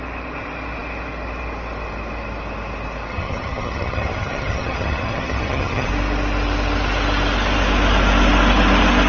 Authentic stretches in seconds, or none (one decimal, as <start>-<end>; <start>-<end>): 0.0-3.1; 5.9-9.1